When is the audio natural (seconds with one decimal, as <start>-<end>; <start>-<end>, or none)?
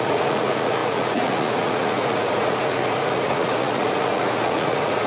none